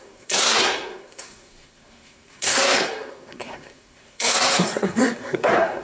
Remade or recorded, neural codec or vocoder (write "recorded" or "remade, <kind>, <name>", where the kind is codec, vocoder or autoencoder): remade, codec, SNAC